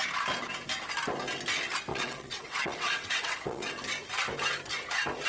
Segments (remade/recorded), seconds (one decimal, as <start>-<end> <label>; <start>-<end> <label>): 0.0-1.9 recorded; 1.9-3.7 remade; 3.7-5.3 recorded